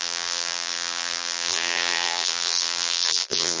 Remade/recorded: remade